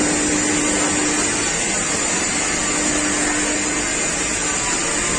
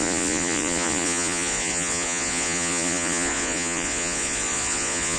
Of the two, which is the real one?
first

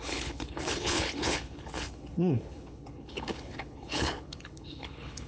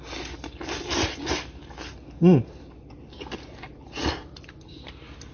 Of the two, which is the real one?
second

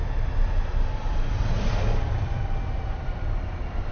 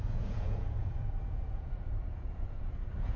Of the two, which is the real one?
first